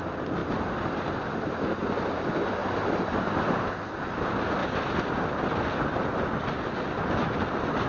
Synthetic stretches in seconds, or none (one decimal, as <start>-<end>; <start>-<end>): 2.6-3.6; 4.6-5.6